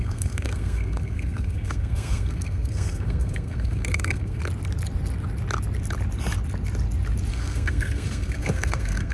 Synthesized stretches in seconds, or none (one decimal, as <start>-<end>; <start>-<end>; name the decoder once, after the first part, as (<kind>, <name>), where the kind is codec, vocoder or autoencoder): 0.0-4.4 (codec, SNAC); 7.3-9.1